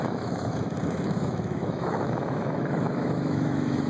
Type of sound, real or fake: fake